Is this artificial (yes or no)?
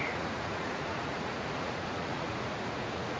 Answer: yes